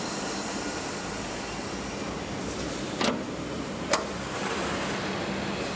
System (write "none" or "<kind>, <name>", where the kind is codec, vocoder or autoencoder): vocoder, BigVGAN v2